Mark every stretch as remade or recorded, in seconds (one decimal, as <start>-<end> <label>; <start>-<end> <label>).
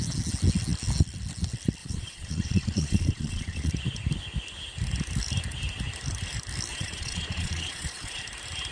0.0-1.8 recorded; 1.8-3.7 remade; 3.7-6.7 recorded; 6.7-8.2 remade; 8.2-8.7 recorded